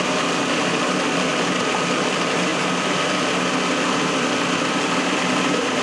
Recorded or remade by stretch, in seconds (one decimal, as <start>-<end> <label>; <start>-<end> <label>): 0.0-2.5 remade; 2.5-4.1 recorded; 4.1-5.8 remade